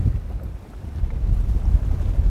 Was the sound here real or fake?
real